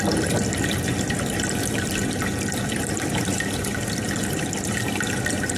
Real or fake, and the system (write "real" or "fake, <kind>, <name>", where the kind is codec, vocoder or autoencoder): fake, vocoder, BigVGAN v2